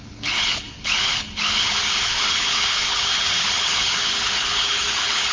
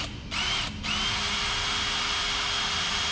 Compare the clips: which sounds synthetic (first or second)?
first